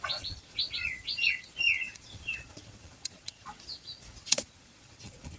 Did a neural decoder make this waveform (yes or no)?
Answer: yes